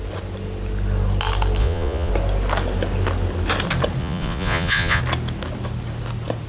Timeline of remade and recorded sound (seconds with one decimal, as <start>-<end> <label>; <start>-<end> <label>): 0.0-1.6 recorded; 1.6-2.1 remade; 2.1-4.0 recorded; 4.0-5.0 remade; 5.0-6.5 recorded